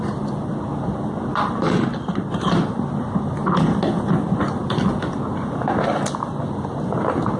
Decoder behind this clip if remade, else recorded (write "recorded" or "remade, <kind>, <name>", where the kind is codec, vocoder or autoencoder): recorded